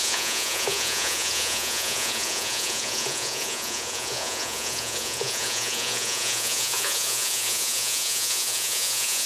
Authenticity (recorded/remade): remade